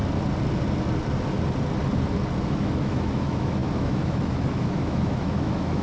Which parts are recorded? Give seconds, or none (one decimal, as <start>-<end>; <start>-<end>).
0.0-2.5